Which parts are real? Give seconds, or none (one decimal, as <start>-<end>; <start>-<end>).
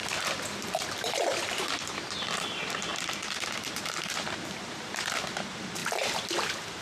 2.9-3.8; 5.8-6.8